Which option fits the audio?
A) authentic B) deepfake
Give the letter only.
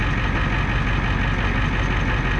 A